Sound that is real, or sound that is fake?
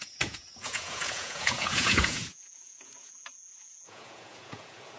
fake